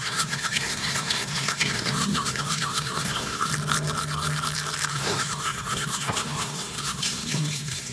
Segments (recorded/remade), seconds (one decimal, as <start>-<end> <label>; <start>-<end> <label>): 0.0-3.5 remade; 3.5-4.9 recorded; 4.9-7.9 remade